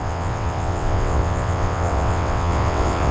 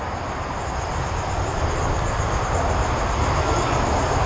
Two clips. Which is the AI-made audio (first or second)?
first